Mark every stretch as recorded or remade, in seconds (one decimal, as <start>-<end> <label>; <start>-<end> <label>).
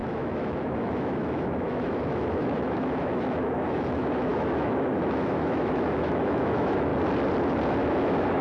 0.0-6.9 remade; 6.9-7.9 recorded; 7.9-8.4 remade